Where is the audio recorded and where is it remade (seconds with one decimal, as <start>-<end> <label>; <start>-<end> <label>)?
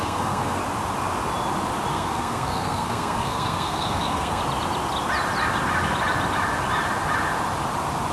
0.0-0.6 remade; 0.6-1.9 recorded; 1.9-4.4 remade; 4.4-8.1 recorded